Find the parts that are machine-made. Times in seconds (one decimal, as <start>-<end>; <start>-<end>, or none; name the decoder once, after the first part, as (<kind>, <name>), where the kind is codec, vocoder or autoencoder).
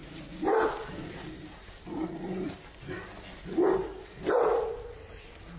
none